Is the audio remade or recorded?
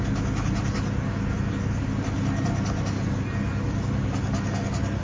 recorded